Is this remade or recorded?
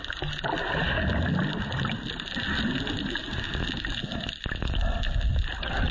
recorded